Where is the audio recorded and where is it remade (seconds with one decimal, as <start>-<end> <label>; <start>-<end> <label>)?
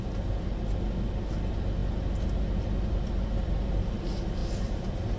0.0-5.2 recorded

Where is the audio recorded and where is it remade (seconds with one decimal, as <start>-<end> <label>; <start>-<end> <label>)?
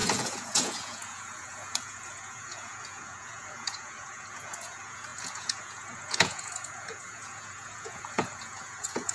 0.0-9.1 remade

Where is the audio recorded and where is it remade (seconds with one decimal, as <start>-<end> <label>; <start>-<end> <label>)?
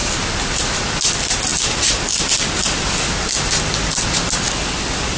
0.0-5.2 recorded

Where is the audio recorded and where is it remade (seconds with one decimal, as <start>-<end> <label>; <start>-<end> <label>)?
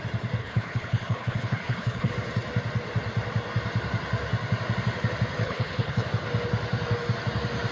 0.0-0.4 recorded; 0.4-2.1 remade; 2.1-5.4 recorded; 5.4-6.1 remade; 6.1-7.7 recorded